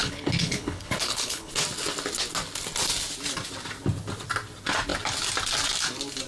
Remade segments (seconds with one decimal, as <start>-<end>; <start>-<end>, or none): 0.0-1.5